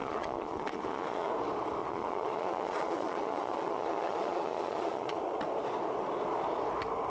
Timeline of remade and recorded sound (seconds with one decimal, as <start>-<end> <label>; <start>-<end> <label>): 0.0-1.3 remade; 1.3-1.8 recorded; 1.8-5.2 remade; 5.2-7.1 recorded